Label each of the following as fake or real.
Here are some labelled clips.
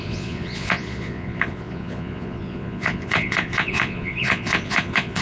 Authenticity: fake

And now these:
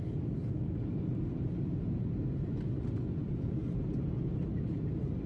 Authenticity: real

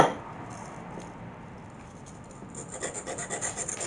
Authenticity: real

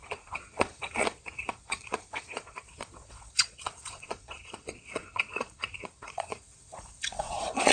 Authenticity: fake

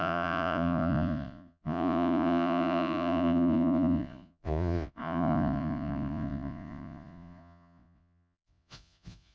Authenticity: fake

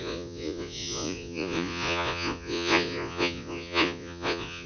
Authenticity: fake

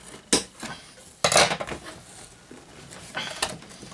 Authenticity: real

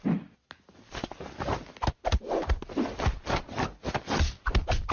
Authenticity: real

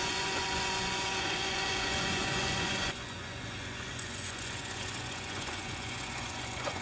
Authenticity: fake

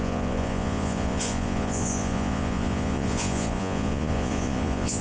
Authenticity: fake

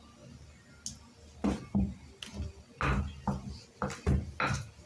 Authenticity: real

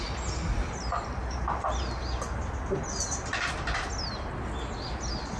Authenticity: real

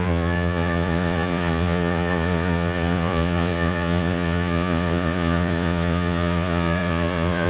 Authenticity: fake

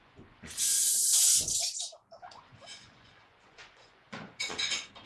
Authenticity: fake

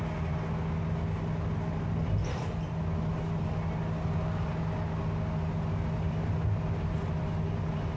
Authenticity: real